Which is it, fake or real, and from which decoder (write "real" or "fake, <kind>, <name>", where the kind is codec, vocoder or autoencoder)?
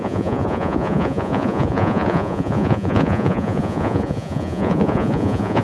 fake, vocoder, Vocos